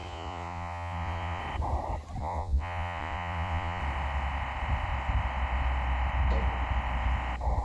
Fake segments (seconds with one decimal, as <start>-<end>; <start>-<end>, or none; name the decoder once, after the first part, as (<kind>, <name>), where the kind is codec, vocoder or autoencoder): 0.0-1.4 (vocoder, Vocos); 2.2-3.8